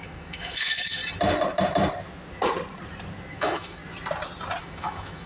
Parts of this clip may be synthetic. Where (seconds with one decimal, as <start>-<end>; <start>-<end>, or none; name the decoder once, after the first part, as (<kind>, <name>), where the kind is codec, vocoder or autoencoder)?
0.0-1.0 (autoencoder, DAC-VAE); 3.3-3.8; 4.6-5.3